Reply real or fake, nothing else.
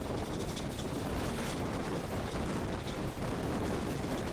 real